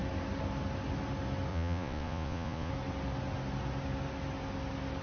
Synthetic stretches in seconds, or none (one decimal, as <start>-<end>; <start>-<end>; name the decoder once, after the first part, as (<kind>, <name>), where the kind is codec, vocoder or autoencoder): 1.5-2.7 (vocoder, Vocos)